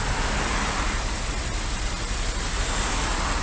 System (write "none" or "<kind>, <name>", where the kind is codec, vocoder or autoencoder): none